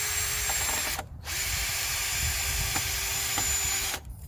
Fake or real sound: fake